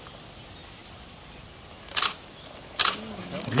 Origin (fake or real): real